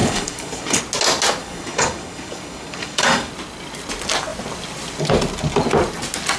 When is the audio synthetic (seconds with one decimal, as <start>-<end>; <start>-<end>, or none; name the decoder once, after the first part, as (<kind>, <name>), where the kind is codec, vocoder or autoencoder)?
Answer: 0.0-0.8 (codec, DAC); 1.4-3.3